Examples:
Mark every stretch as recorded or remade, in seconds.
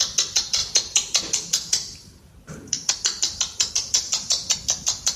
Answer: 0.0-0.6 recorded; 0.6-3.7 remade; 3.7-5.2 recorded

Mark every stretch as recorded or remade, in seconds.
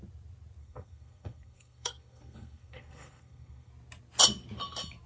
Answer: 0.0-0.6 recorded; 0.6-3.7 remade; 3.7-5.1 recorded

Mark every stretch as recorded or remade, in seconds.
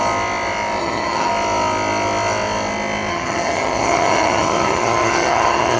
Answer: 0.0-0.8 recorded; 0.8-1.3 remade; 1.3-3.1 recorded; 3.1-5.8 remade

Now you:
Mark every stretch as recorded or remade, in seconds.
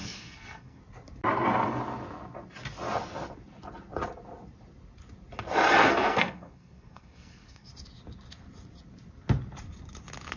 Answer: 0.0-0.8 remade; 0.8-5.8 recorded; 5.8-7.7 remade; 7.7-10.4 recorded